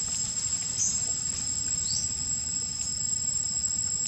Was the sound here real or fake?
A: real